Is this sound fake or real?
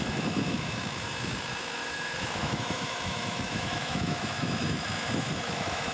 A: fake